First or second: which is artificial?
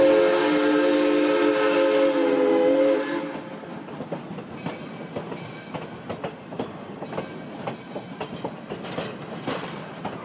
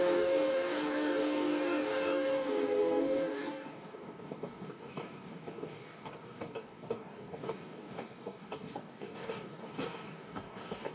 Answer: second